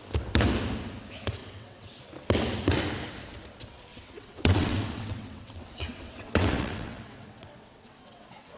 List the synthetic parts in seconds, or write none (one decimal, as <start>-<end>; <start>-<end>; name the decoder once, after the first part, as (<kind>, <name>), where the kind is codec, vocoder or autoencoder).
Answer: 1.4-2.0 (vocoder, WaveNeXt); 3.9-8.6